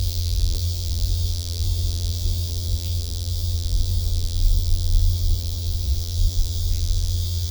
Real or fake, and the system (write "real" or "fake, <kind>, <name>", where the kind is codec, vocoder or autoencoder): fake, vocoder, BigVGAN v2